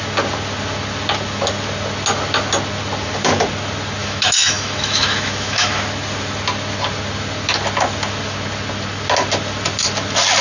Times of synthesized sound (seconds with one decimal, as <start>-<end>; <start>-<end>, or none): 4.0-5.8